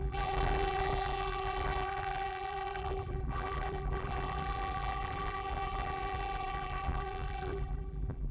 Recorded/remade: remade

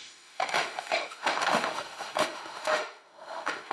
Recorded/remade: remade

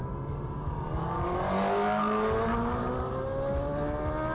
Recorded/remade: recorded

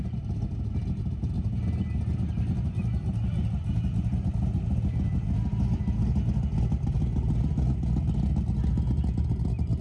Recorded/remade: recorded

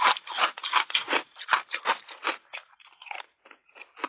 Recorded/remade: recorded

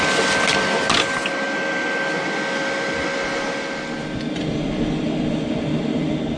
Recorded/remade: recorded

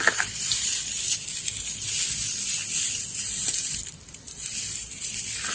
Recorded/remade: recorded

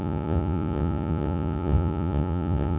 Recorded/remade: remade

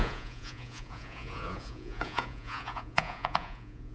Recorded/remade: remade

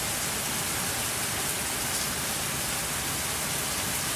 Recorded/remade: recorded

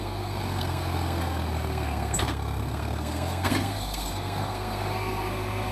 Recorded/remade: remade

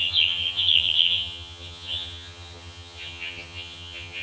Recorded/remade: remade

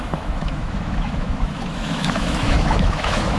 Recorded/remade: remade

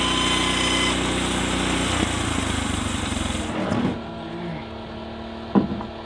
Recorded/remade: recorded